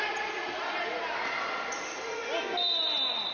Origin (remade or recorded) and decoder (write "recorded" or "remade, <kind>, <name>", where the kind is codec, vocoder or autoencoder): recorded